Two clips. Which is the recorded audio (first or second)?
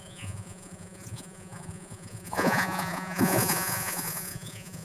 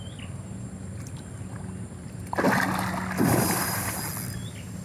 second